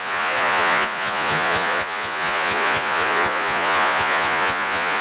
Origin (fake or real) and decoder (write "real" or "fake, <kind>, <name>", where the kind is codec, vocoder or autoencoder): fake, vocoder, Vocos